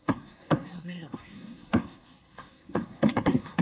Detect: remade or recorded remade